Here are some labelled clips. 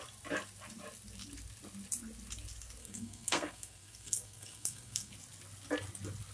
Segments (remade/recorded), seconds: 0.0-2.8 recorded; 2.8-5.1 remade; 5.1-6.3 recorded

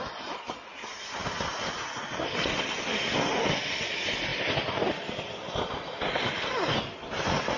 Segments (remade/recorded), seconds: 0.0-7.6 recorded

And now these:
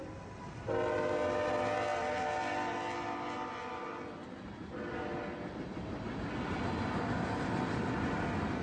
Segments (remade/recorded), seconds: 0.0-8.6 recorded

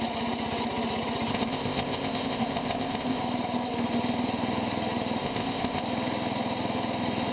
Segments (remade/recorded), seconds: 0.0-1.3 recorded; 1.3-3.2 remade; 3.2-5.2 recorded; 5.2-5.8 remade; 5.8-7.3 recorded

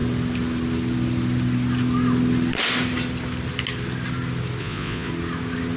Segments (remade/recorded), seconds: 0.0-4.6 recorded; 4.6-5.1 remade; 5.1-5.8 recorded